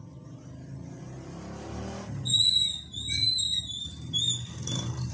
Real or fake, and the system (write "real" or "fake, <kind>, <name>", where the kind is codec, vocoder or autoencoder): real